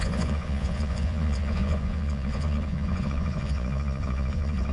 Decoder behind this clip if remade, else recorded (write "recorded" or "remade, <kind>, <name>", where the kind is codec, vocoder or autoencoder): remade, vocoder, Vocos